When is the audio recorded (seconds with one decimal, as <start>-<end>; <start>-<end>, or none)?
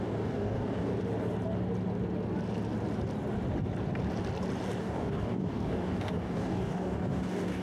0.9-4.8